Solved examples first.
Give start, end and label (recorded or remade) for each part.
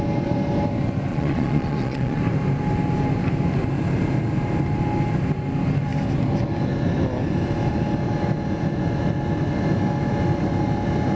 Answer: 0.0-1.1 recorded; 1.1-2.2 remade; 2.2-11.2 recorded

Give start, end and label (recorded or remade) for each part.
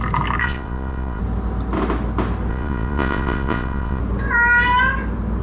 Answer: 0.0-0.4 recorded; 0.4-1.2 remade; 1.2-2.5 recorded; 2.5-4.0 remade; 4.0-5.4 recorded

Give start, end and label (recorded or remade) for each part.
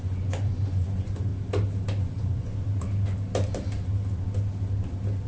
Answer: 0.0-1.3 remade; 1.3-2.0 recorded; 2.0-2.5 remade; 2.5-5.3 recorded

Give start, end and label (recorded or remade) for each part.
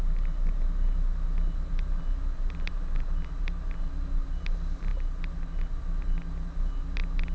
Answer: 0.0-7.3 recorded